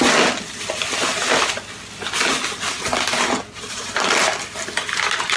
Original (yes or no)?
yes